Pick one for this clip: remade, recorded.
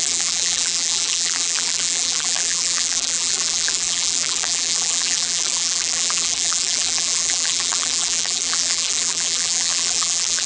remade